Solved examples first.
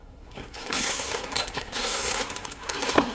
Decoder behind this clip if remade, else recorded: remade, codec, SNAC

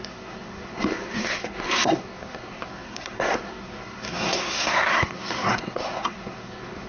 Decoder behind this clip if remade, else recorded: remade, codec, SNAC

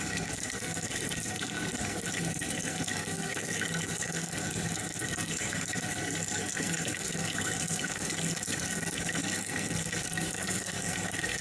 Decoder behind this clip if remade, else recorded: remade, codec, SNAC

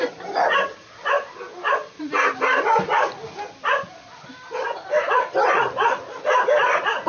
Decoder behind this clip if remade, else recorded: recorded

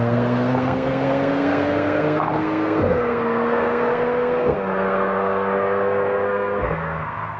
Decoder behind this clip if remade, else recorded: remade, codec, SNAC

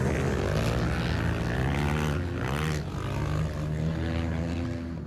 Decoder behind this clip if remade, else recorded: recorded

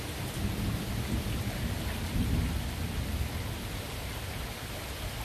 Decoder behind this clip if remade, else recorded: recorded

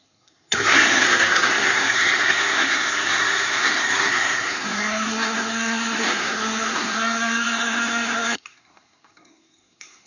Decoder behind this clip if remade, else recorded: remade, codec, SNAC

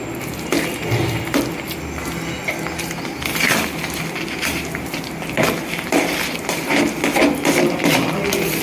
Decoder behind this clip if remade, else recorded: recorded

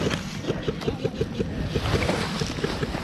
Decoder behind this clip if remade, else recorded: recorded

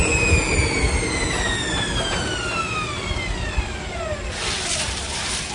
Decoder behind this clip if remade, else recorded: recorded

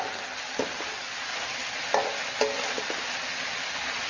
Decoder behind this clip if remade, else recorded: recorded